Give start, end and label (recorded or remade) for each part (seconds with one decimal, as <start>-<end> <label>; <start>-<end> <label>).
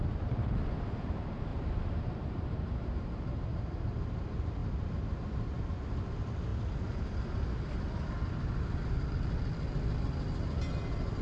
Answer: 0.0-1.5 recorded; 1.5-2.2 remade; 2.2-2.8 recorded; 2.8-3.3 remade; 3.3-11.2 recorded